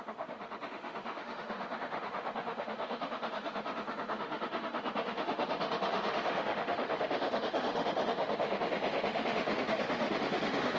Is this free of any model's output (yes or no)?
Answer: no